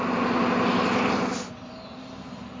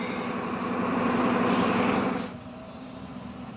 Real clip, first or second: first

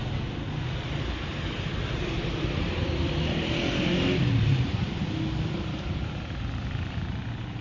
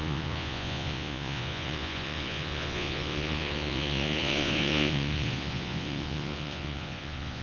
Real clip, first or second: first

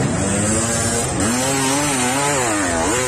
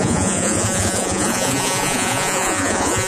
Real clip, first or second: first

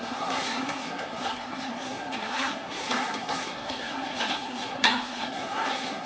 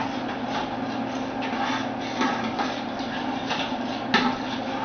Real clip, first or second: second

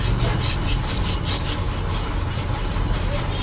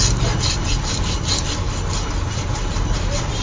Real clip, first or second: first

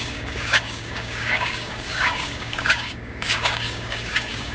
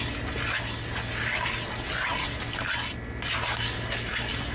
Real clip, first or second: second